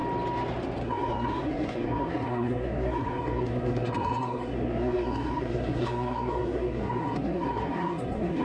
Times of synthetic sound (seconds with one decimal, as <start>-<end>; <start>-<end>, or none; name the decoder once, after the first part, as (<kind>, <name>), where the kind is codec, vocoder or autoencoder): 0.8-8.4 (codec, SNAC)